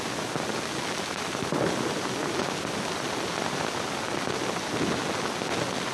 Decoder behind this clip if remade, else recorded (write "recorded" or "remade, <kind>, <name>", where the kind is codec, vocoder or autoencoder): recorded